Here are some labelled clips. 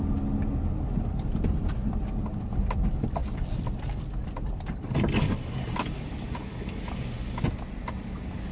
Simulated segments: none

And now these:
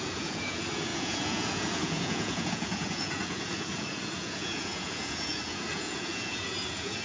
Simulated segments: 0.0-7.0 (vocoder, Vocos)

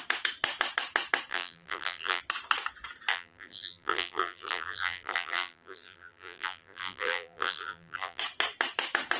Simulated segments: 1.3-2.2 (vocoder, BigVGAN v2); 3.1-8.2

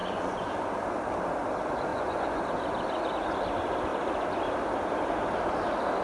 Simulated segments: 0.0-0.5 (vocoder, Vocos); 1.9-2.4

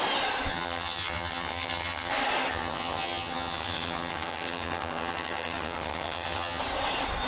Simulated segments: 0.5-2.1 (vocoder, HiFi-GAN); 2.5-6.6

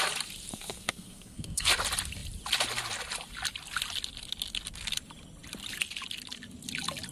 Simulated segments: 0.5-1.7 (codec, SNAC)

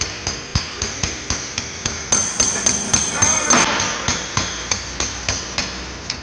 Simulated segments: none